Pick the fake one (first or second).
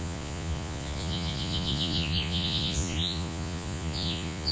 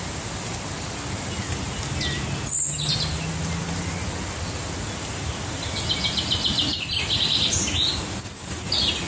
first